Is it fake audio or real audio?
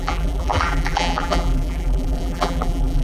fake